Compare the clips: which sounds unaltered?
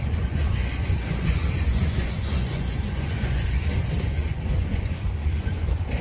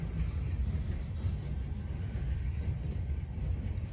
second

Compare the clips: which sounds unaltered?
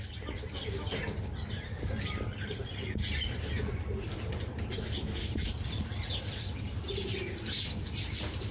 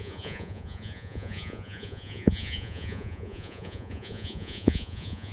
first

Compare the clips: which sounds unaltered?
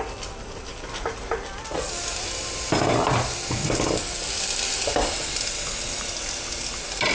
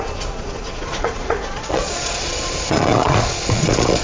first